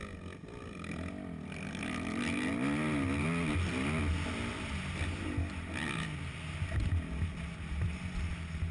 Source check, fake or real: real